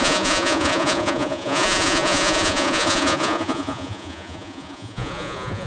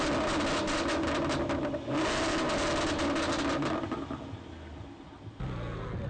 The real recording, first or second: second